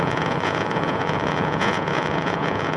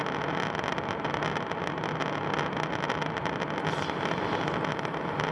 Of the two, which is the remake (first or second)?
first